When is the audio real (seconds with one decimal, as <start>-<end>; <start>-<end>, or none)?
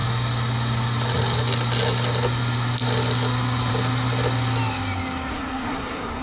0.0-5.3